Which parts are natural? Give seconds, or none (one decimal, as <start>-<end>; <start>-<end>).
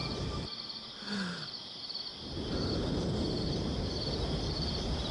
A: 1.6-2.1; 4.3-5.1